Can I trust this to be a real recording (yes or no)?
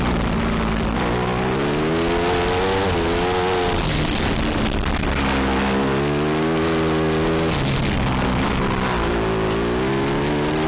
yes